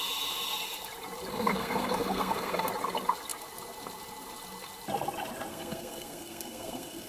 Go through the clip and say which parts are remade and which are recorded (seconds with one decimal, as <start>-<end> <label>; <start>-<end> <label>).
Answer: 0.0-1.3 recorded; 1.3-2.7 remade; 2.7-5.5 recorded; 5.5-7.1 remade

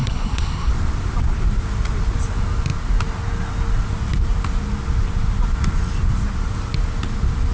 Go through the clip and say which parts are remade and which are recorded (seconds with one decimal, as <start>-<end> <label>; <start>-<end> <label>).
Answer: 0.0-0.7 remade; 0.7-7.5 recorded

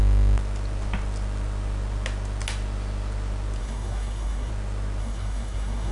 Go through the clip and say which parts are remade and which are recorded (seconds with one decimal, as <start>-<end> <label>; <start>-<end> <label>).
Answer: 0.0-3.6 recorded; 3.6-4.5 remade; 4.5-5.0 recorded; 5.0-5.9 remade

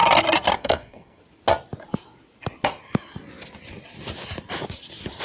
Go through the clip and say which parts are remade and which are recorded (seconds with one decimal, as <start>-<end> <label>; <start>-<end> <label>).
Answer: 0.0-0.6 recorded; 0.6-1.2 remade; 1.2-5.2 recorded

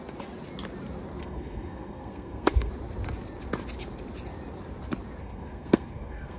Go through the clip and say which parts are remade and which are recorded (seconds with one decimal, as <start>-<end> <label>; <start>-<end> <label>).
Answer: 0.0-1.2 recorded; 1.2-2.7 remade; 2.7-5.2 recorded; 5.2-6.4 remade

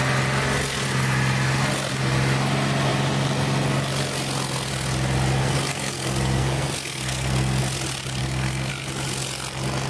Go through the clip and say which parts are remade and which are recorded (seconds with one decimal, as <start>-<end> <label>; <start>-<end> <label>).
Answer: 0.0-5.4 recorded; 5.4-7.6 remade; 7.6-8.2 recorded; 8.2-8.7 remade; 8.7-9.9 recorded

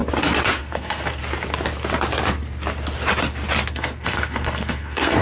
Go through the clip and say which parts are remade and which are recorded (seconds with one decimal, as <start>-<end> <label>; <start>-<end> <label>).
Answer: 0.0-0.6 recorded; 0.6-1.2 remade; 1.2-3.7 recorded; 3.7-5.2 remade